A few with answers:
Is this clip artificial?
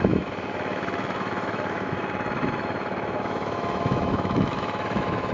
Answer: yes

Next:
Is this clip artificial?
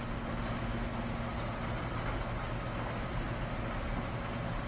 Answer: no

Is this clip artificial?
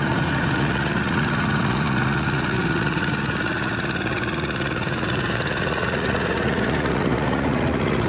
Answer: yes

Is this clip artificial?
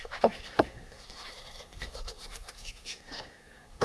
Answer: yes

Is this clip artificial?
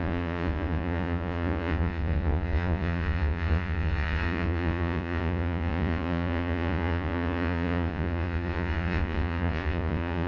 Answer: yes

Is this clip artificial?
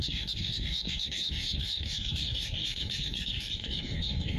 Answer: yes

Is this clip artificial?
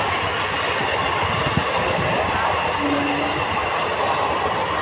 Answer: no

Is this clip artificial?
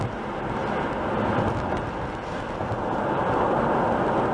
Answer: no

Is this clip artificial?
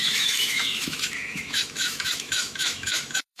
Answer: yes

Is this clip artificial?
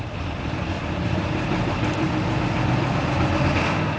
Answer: yes